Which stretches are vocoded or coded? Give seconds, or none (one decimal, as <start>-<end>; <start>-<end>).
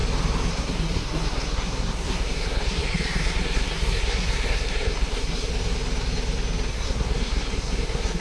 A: 0.5-5.5; 6.7-8.2